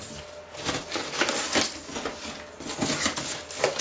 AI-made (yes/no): no